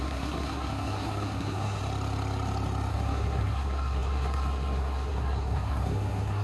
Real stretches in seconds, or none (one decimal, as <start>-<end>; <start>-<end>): 1.8-2.9